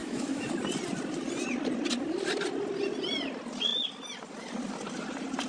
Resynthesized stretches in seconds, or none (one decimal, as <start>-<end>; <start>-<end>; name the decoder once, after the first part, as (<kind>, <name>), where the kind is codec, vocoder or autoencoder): 0.0-0.5 (autoencoder, DAC-VAE)